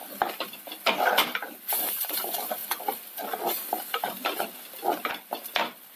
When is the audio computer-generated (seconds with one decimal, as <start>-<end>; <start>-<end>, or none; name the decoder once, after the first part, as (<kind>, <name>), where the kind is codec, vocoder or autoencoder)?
1.0-2.6 (vocoder, BigVGAN v2); 5.1-6.0